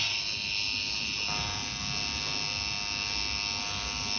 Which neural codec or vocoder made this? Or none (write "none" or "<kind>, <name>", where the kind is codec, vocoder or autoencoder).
none